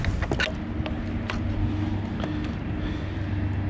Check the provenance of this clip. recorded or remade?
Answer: recorded